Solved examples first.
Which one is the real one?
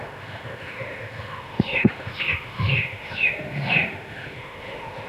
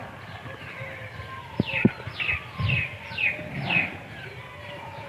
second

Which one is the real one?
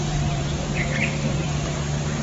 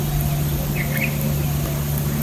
second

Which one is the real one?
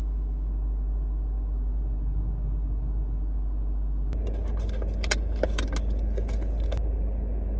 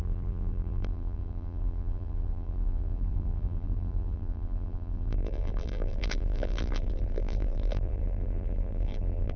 first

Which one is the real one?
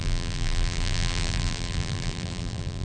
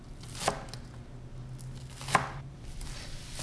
second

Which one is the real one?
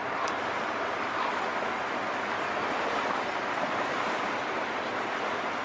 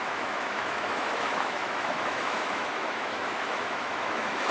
first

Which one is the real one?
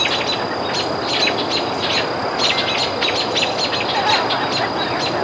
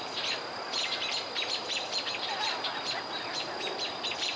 first